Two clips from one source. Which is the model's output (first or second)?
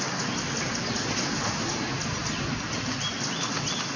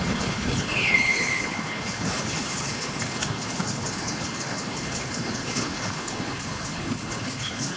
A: second